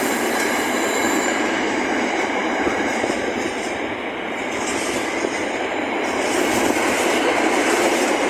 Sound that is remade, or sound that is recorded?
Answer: remade